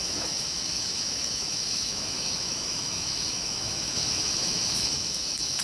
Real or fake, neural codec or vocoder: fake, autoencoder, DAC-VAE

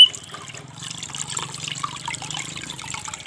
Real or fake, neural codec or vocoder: real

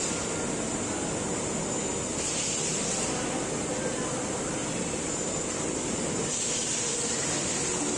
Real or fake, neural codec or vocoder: real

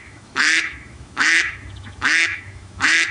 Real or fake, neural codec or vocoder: fake, autoencoder, DAC-VAE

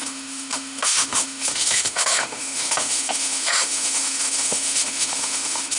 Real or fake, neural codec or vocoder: fake, autoencoder, DAC-VAE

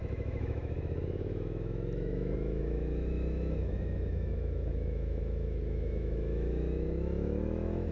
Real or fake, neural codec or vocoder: fake, autoencoder, DAC-VAE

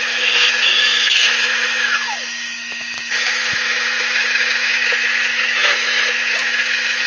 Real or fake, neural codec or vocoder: fake, autoencoder, DAC-VAE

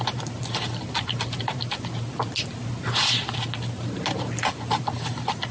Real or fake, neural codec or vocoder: real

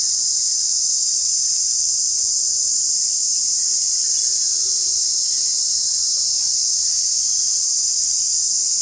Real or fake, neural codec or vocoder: real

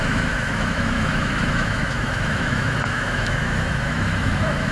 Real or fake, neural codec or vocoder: fake, autoencoder, DAC-VAE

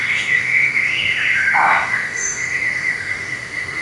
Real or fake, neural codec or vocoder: fake, autoencoder, DAC-VAE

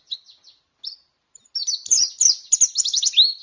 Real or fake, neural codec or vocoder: real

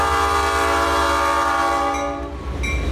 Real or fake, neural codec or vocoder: real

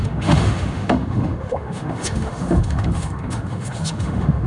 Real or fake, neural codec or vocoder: fake, autoencoder, DAC-VAE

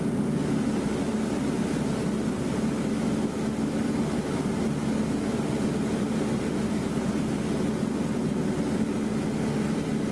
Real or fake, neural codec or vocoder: real